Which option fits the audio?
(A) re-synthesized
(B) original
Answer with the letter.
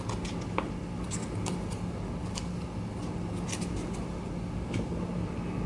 B